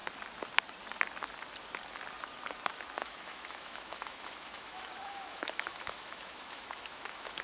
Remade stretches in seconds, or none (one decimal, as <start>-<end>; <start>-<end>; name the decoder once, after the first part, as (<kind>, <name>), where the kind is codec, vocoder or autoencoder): 3.0-7.4 (autoencoder, DAC-VAE)